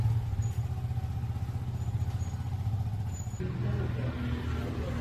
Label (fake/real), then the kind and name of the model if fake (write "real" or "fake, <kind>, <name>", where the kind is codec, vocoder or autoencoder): real